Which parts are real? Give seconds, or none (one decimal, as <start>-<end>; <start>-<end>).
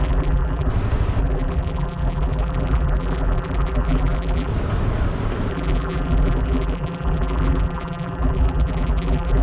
0.7-1.2; 4.5-5.5